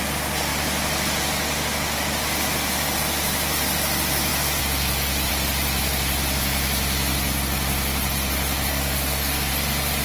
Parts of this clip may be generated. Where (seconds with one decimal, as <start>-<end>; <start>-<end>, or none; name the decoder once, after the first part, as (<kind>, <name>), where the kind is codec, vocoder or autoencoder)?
8.7-9.5 (codec, SNAC)

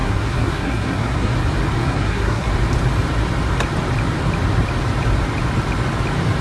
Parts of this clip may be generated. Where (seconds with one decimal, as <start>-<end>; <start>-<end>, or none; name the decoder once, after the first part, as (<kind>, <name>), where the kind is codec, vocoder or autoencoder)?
0.0-1.3 (codec, SNAC); 1.8-2.5

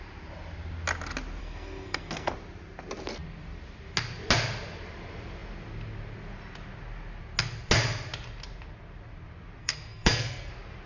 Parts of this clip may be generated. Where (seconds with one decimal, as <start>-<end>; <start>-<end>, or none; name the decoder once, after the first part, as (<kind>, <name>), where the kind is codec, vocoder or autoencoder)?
1.4-2.3 (codec, SNAC); 9.6-10.5

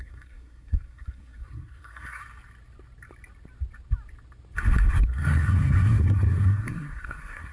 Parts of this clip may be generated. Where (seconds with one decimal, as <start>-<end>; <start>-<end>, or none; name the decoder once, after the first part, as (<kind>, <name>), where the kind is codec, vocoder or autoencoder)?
0.0-2.2 (codec, SNAC); 4.9-7.5

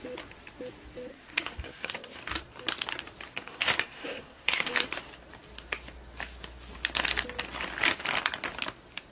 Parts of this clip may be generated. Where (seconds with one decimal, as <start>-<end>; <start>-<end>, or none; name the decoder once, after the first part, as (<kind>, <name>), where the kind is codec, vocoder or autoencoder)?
1.1-2.2 (codec, SNAC); 3.3-4.7

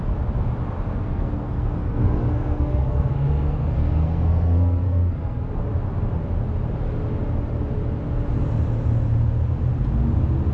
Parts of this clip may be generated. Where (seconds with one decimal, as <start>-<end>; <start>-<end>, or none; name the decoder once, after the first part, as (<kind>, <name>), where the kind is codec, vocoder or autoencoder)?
0.9-5.6 (codec, SNAC)